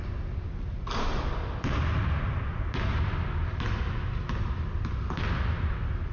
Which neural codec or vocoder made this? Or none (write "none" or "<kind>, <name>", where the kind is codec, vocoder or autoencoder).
none